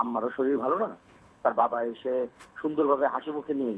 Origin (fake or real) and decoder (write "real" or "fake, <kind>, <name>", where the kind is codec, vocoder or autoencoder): fake, codec, HILCodec